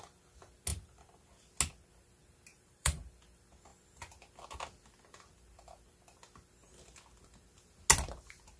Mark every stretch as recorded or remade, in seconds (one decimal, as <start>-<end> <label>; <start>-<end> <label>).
0.0-2.5 recorded; 2.5-3.0 remade; 3.0-8.6 recorded